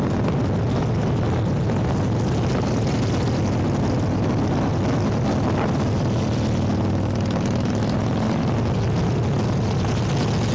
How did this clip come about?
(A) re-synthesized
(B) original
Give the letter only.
B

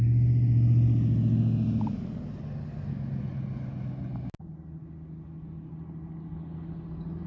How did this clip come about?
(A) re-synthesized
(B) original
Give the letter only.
B